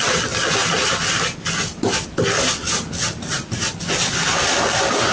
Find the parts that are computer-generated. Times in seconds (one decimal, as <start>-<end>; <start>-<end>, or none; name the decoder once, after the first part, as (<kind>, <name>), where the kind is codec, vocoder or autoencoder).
none